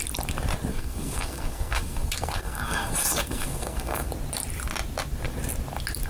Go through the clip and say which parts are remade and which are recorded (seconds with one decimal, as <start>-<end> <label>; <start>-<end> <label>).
0.0-0.7 recorded; 0.7-4.1 remade; 4.1-6.1 recorded